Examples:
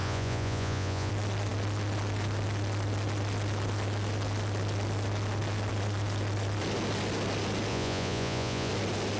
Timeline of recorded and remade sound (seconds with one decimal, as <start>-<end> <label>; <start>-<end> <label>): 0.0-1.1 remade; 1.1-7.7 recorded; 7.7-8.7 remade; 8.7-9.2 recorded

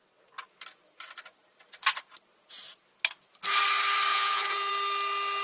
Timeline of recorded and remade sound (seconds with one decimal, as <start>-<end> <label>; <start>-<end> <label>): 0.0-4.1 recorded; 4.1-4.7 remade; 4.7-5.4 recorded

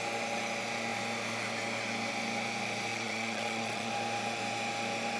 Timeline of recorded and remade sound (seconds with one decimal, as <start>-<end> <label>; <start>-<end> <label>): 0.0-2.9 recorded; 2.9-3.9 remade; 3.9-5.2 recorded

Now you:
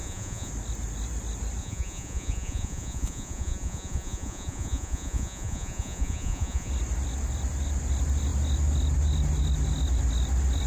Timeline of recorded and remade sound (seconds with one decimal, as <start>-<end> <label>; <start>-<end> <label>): 0.0-0.5 remade; 0.5-1.6 recorded; 1.6-6.7 remade; 6.7-10.7 recorded

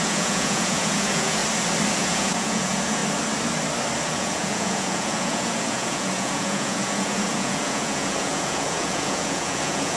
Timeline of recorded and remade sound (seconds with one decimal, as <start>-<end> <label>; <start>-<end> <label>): 0.0-1.4 remade; 1.4-1.9 recorded; 1.9-3.0 remade; 3.0-4.1 recorded; 4.1-10.0 remade

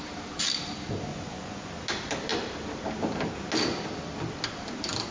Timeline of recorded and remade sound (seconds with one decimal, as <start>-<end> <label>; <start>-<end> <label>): 0.0-1.1 recorded; 1.1-1.7 remade; 1.7-5.1 recorded